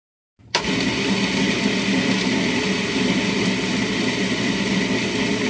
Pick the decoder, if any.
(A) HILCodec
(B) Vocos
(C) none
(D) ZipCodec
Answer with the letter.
C